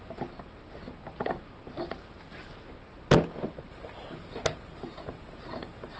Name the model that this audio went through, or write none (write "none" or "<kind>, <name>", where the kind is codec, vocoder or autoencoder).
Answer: none